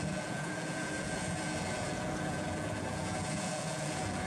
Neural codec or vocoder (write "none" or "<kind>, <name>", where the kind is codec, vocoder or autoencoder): vocoder, Vocos